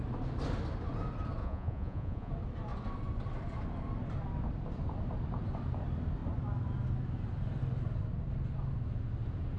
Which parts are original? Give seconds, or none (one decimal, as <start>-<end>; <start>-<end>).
0.0-1.4; 2.3-9.6